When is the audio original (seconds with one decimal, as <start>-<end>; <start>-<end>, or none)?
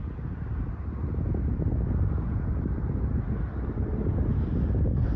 0.0-5.2